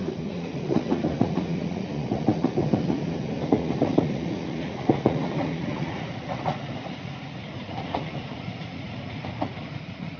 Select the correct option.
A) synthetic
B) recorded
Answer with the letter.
A